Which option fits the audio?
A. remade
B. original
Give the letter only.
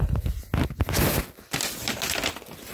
B